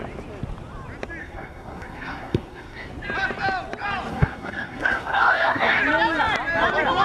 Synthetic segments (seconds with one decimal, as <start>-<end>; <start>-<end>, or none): 1.2-2.9; 4.1-5.8